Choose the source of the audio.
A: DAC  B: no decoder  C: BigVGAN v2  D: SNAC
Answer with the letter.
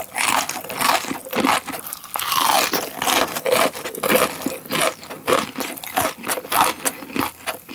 B